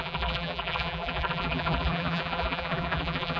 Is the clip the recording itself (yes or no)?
no